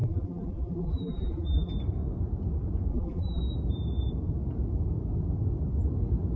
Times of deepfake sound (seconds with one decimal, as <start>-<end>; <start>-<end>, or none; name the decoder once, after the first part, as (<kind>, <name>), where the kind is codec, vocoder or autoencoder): 0.0-1.7 (vocoder, BigVGAN v2); 2.9-3.4